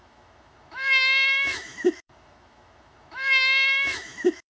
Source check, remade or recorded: remade